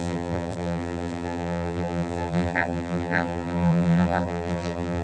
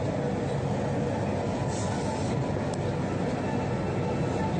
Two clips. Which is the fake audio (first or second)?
first